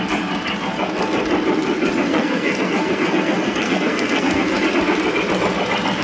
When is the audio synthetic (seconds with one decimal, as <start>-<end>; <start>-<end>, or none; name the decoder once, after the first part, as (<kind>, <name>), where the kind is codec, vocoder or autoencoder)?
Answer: 2.1-4.6 (codec, SNAC)